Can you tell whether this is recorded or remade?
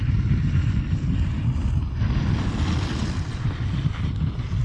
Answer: recorded